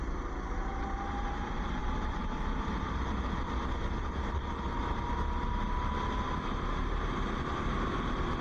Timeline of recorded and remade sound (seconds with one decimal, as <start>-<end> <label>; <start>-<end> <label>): 0.0-1.8 recorded; 1.8-2.4 remade; 2.4-8.4 recorded